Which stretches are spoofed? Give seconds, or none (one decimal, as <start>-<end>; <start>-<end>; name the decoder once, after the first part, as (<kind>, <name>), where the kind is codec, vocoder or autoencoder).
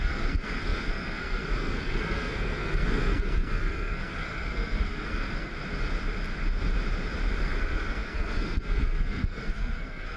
0.0-5.5 (codec, SNAC); 7.4-10.2